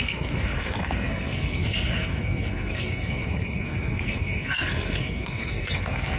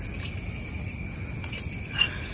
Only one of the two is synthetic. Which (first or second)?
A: first